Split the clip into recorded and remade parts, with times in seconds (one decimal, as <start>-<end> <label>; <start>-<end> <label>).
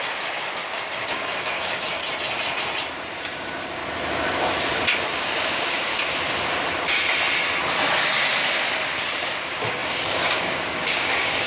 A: 0.0-2.0 remade; 2.0-3.2 recorded; 3.2-3.8 remade; 3.8-5.1 recorded; 5.1-5.9 remade; 5.9-9.1 recorded; 9.1-11.5 remade